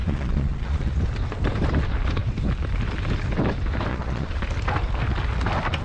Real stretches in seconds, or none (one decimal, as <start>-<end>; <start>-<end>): 1.0-3.9; 4.4-5.8